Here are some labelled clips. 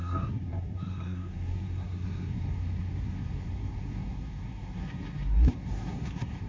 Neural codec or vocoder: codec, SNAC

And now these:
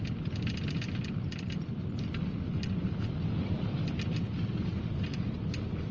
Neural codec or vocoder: none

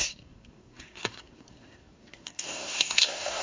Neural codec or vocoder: codec, SNAC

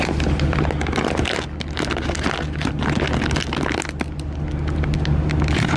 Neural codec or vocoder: none